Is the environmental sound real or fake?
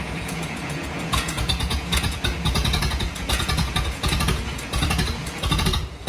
fake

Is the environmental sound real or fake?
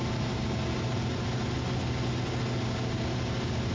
real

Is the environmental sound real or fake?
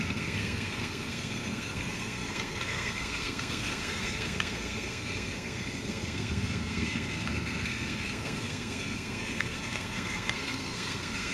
fake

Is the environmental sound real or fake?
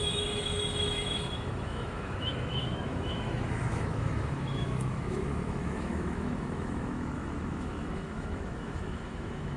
fake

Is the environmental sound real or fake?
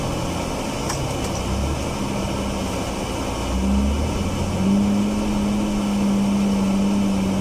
real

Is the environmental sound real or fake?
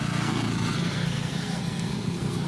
fake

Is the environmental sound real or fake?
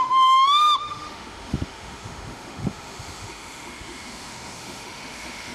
fake